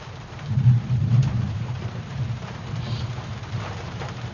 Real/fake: fake